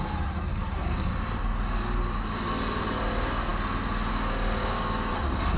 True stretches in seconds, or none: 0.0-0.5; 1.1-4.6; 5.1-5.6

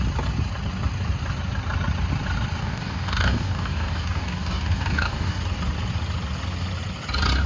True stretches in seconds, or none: 0.0-2.6; 5.4-7.5

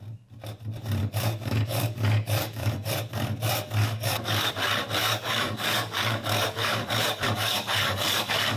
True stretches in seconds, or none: 0.0-1.0; 2.9-3.8; 4.5-5.0

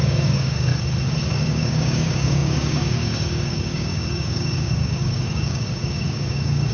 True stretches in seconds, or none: 0.7-1.3

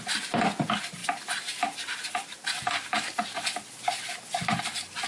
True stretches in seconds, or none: 0.0-5.1

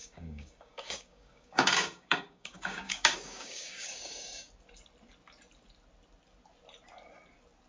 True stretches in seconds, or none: 4.5-7.7

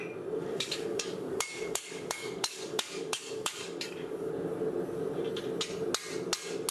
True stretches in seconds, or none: 0.0-0.4; 4.3-6.7

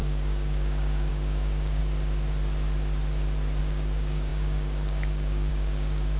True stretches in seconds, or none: 1.8-3.6